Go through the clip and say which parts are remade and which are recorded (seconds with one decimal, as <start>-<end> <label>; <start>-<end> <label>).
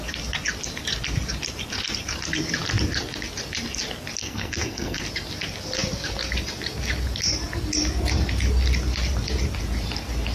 0.0-4.2 recorded; 4.2-5.0 remade; 5.0-10.3 recorded